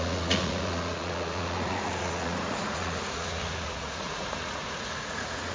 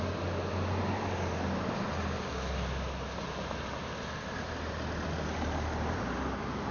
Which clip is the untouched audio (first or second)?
second